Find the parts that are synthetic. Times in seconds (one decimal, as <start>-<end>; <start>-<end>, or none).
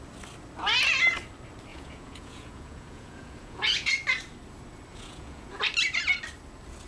1.7-3.9; 4.9-5.6